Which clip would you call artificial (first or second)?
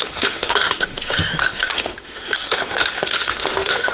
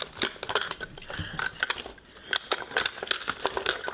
first